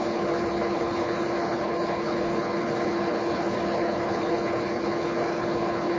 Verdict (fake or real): fake